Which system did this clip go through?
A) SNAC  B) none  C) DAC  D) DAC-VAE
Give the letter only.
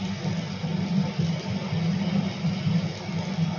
B